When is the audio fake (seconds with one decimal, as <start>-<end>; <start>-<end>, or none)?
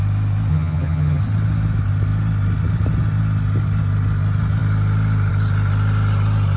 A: 0.5-1.2